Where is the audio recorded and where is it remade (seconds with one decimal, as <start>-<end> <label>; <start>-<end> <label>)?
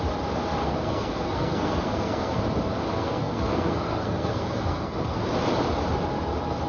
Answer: 0.0-0.6 recorded; 0.6-2.4 remade; 2.4-2.9 recorded; 2.9-5.2 remade; 5.2-6.7 recorded